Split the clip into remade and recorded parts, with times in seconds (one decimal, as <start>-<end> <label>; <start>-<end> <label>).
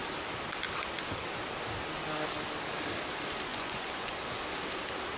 0.0-3.5 recorded; 3.5-4.1 remade; 4.1-5.2 recorded